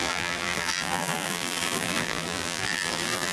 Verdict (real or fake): fake